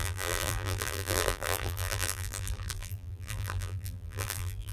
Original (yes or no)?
no